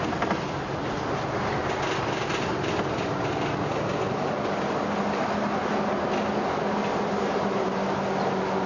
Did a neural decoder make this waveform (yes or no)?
no